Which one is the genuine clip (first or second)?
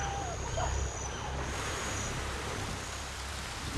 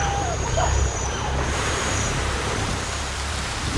first